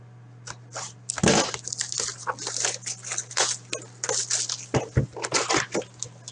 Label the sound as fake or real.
real